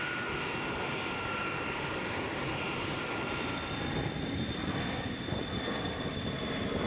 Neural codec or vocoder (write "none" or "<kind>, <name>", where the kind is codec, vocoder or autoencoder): none